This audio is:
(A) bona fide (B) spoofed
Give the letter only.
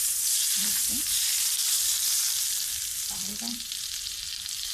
B